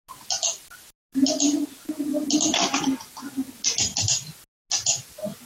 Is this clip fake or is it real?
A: real